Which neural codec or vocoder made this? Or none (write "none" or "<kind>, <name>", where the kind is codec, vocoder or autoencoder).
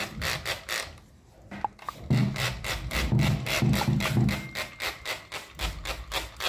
none